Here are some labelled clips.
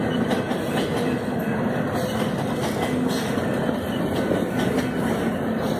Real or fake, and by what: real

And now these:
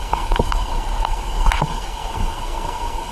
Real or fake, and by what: fake, codec, SNAC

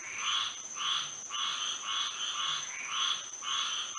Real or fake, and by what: real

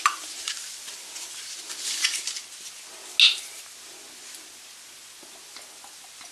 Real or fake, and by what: real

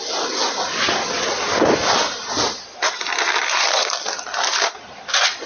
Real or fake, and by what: real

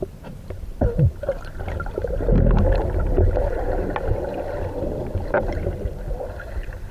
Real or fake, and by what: real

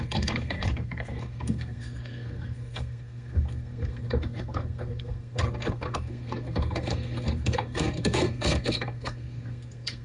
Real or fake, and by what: fake, codec, SNAC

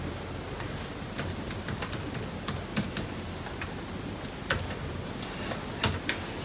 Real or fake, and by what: real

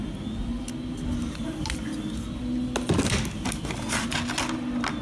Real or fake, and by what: real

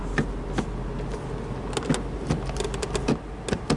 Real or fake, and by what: real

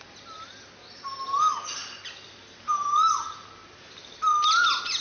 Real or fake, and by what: real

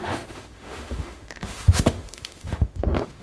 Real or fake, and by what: fake, autoencoder, DAC-VAE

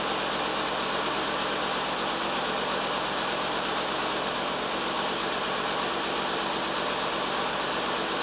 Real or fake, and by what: real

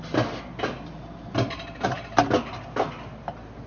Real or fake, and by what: real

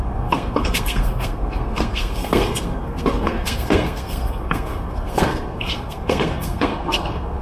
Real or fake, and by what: fake, codec, SNAC